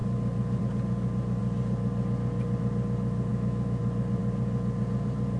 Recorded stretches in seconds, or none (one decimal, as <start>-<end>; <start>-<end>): 0.0-3.3; 3.8-5.4